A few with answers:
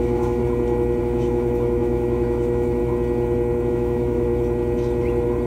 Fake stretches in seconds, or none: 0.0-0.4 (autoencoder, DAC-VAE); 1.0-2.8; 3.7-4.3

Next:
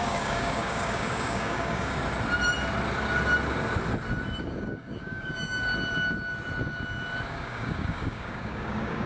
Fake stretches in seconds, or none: 0.0-2.0 (codec, DAC); 4.4-5.7; 7.3-9.1

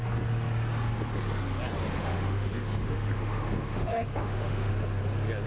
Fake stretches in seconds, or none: 2.0-4.7 (autoencoder, DAC-VAE)

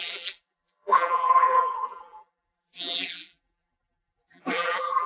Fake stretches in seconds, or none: 0.0-5.1 (vocoder, BigVGAN v2)

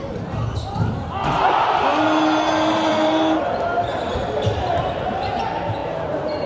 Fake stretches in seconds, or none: 5.8-6.5 (vocoder, BigVGAN v2)

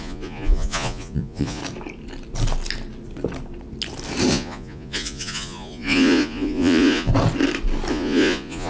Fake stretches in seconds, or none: 0.0-1.6 (vocoder, Vocos); 4.3-7.1; 7.9-8.7